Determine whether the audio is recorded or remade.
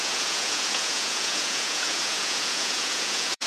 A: remade